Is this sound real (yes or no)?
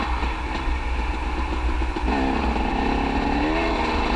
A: yes